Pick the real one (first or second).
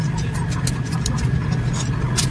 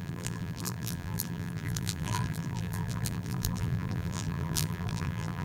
first